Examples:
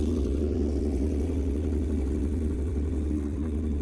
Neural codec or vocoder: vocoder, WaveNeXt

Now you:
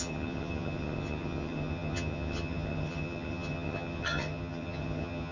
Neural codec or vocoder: vocoder, HiFi-GAN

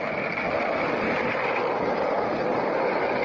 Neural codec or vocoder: none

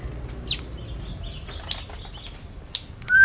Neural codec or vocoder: none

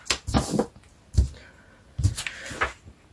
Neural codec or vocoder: none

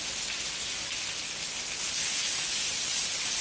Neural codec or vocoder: none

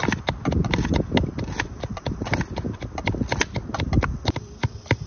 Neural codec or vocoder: none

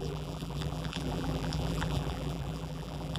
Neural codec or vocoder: vocoder, BigVGAN v2